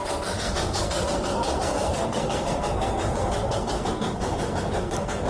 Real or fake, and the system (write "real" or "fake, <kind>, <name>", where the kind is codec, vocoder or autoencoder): fake, codec, SNAC